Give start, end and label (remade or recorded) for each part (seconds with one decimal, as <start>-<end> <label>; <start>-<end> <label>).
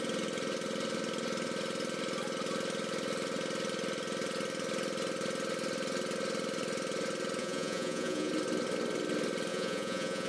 0.0-7.4 recorded; 7.4-8.3 remade; 8.3-9.5 recorded; 9.5-10.3 remade